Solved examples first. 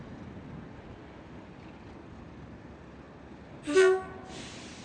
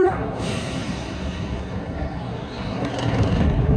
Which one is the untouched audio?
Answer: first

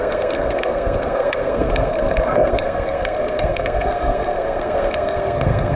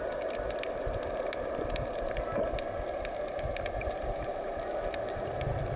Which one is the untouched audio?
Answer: second